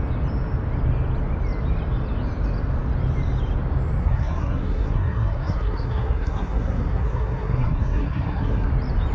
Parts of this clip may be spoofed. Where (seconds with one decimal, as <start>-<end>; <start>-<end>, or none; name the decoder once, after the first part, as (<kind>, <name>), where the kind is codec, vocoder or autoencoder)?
4.0-8.7 (codec, SNAC)